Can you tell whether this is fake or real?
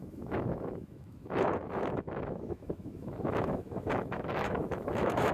fake